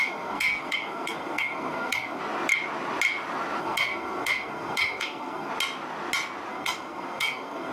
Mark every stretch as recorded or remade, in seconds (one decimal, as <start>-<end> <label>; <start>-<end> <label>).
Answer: 0.0-2.2 remade; 2.2-3.6 recorded; 3.6-5.5 remade; 5.5-6.5 recorded; 6.5-7.7 remade